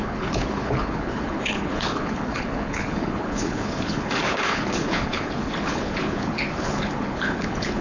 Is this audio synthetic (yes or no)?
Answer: yes